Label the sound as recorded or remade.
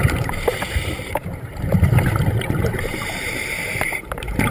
remade